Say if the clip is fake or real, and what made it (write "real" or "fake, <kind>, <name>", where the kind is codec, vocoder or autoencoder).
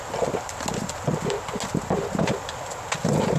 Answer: real